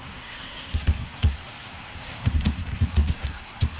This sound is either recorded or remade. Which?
remade